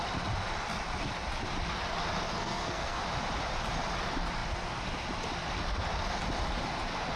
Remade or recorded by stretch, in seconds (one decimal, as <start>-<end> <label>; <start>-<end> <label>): 0.0-2.3 recorded; 2.3-3.0 remade; 3.0-7.2 recorded